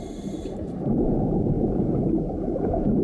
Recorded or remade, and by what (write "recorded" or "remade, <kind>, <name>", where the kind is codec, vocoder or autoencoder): remade, vocoder, BigVGAN v2